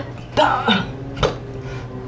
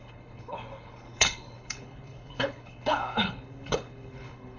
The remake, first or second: second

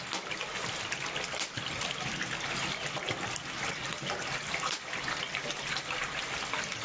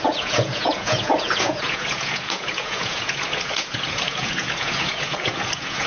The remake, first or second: second